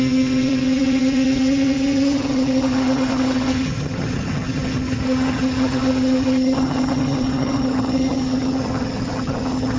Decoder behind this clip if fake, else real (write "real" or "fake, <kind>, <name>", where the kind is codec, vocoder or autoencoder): fake, vocoder, HiFi-GAN